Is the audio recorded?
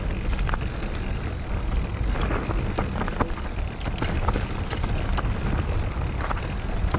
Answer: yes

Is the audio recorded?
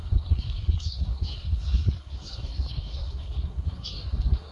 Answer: no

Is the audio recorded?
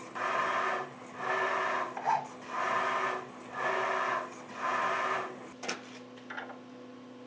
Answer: yes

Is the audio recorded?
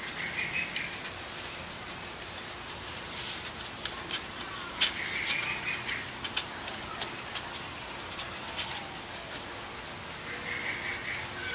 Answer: yes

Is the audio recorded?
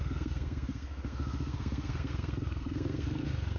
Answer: no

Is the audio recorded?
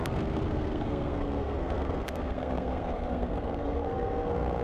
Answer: no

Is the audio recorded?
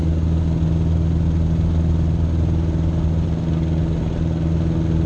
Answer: yes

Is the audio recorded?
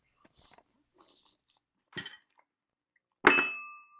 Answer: yes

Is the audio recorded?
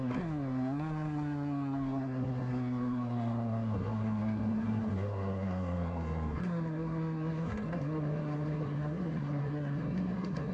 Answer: no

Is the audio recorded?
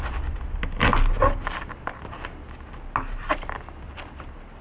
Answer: yes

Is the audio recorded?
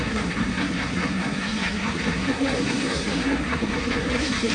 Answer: no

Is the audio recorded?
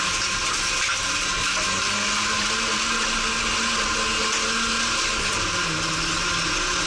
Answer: yes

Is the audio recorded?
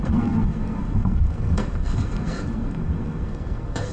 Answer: no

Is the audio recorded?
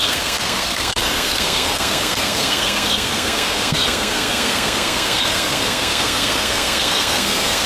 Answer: no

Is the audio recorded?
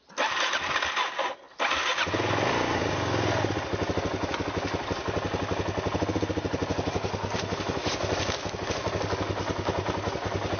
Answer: yes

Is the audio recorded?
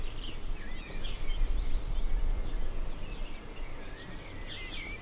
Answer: yes